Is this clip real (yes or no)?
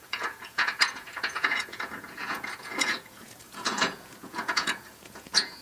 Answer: no